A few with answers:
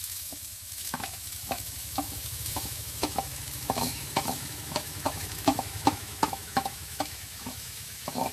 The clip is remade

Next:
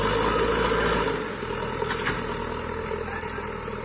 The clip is recorded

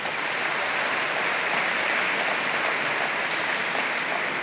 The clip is recorded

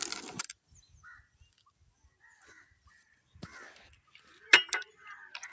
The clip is recorded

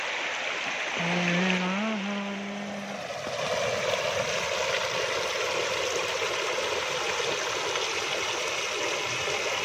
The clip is recorded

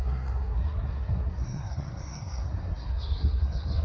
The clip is remade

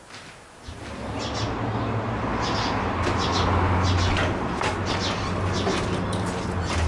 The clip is recorded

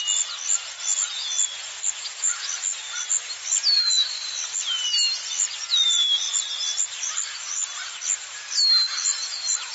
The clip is recorded